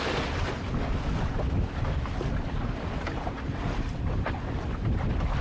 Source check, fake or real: real